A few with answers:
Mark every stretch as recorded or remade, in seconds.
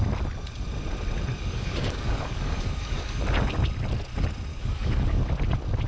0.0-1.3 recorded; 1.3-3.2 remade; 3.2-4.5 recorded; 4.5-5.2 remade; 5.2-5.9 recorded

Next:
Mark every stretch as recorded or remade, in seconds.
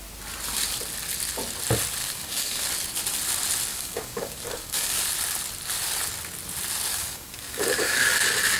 0.0-2.0 recorded; 2.0-2.6 remade; 2.6-3.7 recorded; 3.7-5.0 remade; 5.0-6.9 recorded; 6.9-8.2 remade; 8.2-8.6 recorded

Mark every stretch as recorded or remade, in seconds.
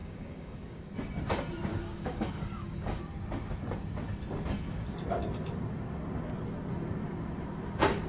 0.0-0.9 remade; 0.9-1.7 recorded; 1.7-3.0 remade; 3.0-8.1 recorded